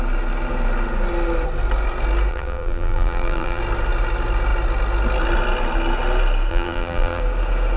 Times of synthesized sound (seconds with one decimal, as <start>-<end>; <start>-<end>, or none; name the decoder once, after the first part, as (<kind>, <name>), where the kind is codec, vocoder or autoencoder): 2.3-3.6 (vocoder, BigVGAN v2); 6.5-7.2

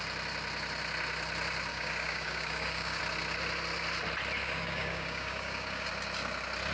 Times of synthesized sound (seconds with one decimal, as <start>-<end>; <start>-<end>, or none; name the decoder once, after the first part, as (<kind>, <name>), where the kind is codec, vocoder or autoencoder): 1.7-3.0 (codec, DAC); 4.4-5.9

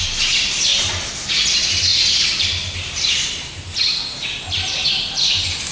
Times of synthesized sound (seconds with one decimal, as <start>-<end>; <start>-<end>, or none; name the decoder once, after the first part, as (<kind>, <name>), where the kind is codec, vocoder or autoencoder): none

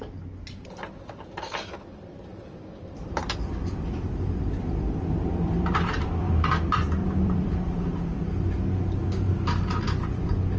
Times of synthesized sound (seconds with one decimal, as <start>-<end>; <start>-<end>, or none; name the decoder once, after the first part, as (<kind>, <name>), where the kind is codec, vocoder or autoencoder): 2.3-6.3 (vocoder, BigVGAN v2); 7.0-7.5

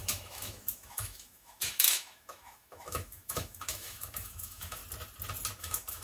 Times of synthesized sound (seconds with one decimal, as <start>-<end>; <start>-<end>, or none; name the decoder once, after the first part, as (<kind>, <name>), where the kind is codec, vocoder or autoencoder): 0.0-4.8 (autoencoder, DAC-VAE); 5.6-6.0